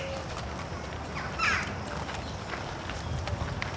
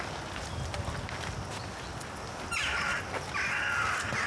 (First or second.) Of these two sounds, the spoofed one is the first